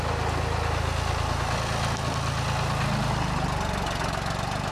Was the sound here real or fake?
real